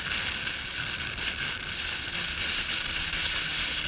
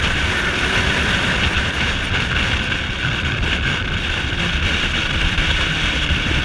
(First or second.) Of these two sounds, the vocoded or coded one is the second